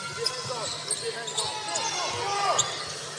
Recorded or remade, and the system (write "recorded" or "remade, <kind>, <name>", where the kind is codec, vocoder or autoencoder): recorded